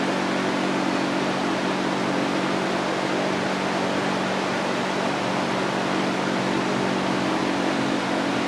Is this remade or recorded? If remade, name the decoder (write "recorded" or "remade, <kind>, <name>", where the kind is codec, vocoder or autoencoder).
recorded